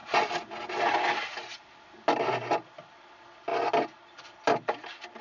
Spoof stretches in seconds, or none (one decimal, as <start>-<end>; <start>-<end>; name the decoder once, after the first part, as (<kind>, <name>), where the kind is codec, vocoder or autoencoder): none